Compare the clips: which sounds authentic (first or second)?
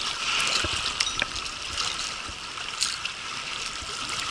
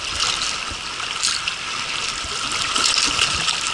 second